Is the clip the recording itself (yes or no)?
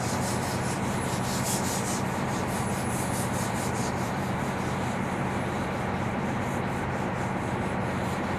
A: yes